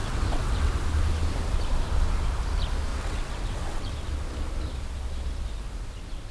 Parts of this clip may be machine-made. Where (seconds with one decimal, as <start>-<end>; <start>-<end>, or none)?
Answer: 0.0-0.7; 2.9-3.9